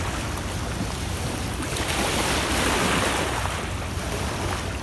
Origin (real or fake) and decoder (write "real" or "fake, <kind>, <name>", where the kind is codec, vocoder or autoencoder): real